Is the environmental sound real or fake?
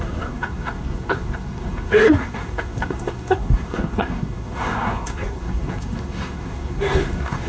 fake